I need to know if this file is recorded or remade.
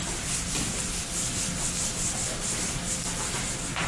recorded